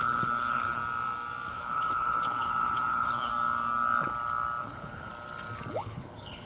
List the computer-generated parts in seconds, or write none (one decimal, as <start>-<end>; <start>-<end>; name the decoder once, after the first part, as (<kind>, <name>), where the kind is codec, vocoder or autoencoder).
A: 0.0-0.8 (codec, HILCodec); 1.5-3.3; 4.6-5.1; 5.7-6.5